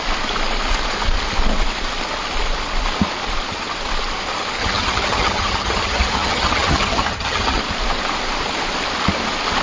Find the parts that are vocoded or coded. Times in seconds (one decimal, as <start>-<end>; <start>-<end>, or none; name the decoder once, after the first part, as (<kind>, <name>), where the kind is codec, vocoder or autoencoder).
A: 4.6-7.6 (vocoder, HiFi-GAN)